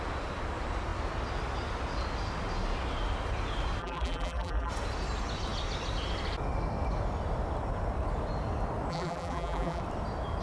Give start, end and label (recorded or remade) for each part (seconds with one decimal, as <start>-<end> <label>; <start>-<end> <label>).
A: 0.0-3.8 recorded; 3.8-4.7 remade; 4.7-8.9 recorded; 8.9-9.8 remade; 9.8-10.4 recorded